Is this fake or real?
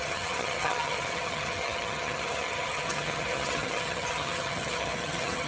fake